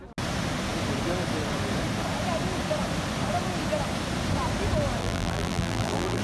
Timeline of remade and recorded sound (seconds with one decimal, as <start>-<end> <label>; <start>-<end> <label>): 0.0-5.0 recorded; 5.0-6.2 remade